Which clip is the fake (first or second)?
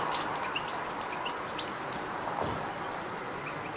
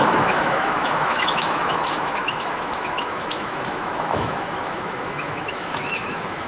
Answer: second